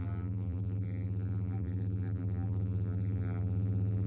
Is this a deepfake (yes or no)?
yes